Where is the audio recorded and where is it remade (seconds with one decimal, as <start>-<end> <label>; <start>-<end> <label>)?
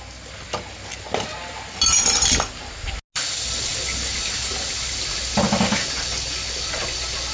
0.0-7.3 recorded